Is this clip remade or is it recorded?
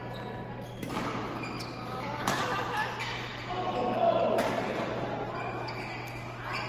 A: recorded